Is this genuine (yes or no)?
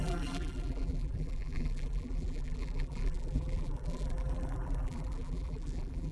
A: no